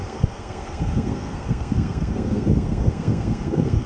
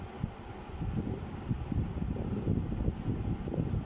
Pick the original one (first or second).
second